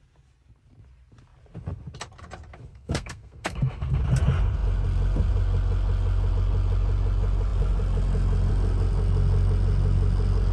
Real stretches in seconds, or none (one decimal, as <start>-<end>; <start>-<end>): 0.0-2.7; 4.0-10.5